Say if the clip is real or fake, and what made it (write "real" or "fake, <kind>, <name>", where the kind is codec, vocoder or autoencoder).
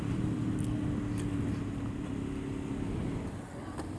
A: real